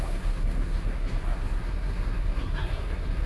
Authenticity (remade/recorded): remade